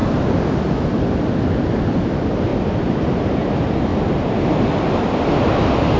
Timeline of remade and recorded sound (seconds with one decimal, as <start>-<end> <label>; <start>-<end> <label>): 0.0-2.5 recorded; 2.5-3.3 remade; 3.3-3.9 recorded; 3.9-4.5 remade; 4.5-6.0 recorded